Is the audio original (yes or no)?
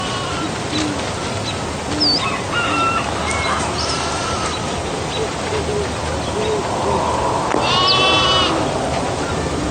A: yes